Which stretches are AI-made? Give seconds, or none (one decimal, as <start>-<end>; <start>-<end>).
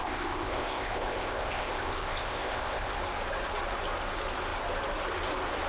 0.0-3.0